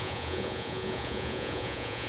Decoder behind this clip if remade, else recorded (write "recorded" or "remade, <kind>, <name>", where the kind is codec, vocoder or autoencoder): remade, vocoder, Vocos